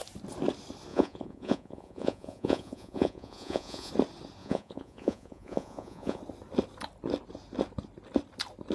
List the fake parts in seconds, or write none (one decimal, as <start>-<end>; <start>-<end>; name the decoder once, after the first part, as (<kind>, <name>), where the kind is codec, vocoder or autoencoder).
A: 0.9-3.9 (vocoder, Vocos); 4.4-6.2